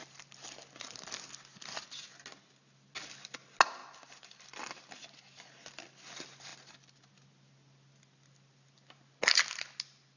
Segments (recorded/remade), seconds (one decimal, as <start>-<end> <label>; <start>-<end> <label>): 0.0-0.8 remade; 0.8-3.8 recorded; 3.8-4.9 remade; 4.9-6.5 recorded; 6.5-7.0 remade; 7.0-10.2 recorded